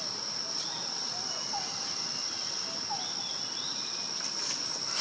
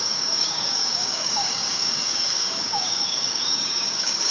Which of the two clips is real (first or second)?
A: first